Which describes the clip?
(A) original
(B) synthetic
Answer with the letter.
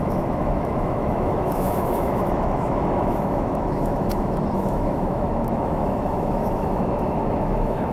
B